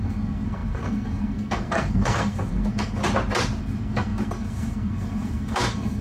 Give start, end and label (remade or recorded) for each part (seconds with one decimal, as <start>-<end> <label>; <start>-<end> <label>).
0.0-3.0 remade; 3.0-3.6 recorded; 3.6-6.0 remade